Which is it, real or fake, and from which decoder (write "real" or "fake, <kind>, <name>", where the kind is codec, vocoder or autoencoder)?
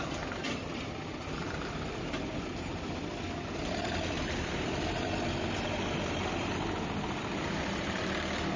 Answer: real